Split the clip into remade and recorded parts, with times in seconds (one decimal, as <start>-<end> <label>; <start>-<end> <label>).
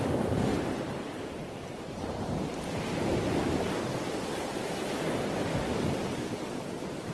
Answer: 0.0-0.5 recorded; 0.5-2.0 remade; 2.0-2.5 recorded; 2.5-3.1 remade; 3.1-7.1 recorded